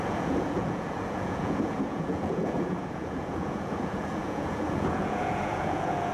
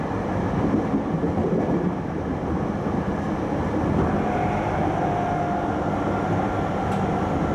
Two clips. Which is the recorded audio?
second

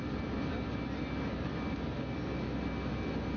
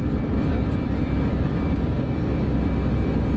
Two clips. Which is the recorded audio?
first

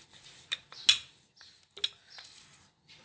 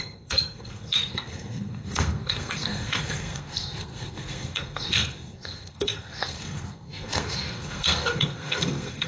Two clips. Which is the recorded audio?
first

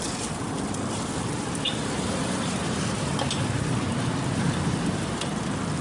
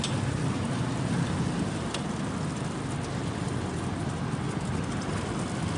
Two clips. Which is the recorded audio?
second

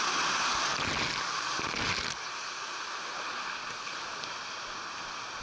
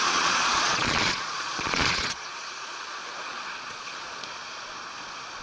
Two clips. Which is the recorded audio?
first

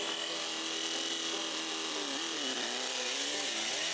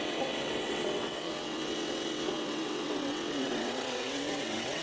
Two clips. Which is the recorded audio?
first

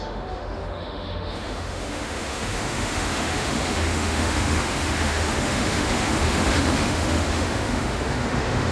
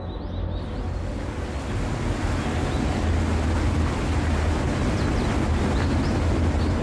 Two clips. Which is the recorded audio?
second